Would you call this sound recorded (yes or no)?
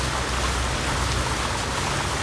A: yes